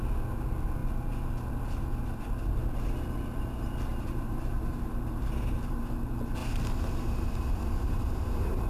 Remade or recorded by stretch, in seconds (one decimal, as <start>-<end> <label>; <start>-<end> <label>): 0.0-3.9 recorded; 3.9-5.8 remade; 5.8-6.4 recorded; 6.4-8.7 remade